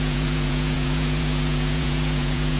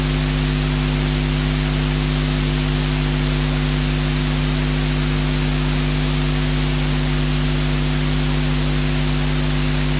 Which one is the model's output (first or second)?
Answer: first